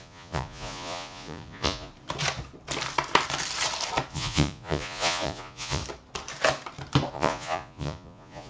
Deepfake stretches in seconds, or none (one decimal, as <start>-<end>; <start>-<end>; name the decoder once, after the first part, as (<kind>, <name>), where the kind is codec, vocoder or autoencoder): 0.0-1.9 (vocoder, Vocos); 4.1-5.8; 7.1-8.5